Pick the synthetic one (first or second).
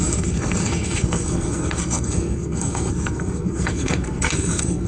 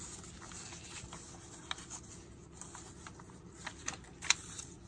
first